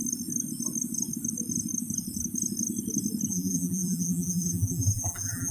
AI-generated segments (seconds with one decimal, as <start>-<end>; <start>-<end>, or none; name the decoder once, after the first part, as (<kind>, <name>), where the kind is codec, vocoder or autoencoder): 3.3-5.5 (vocoder, BigVGAN v2)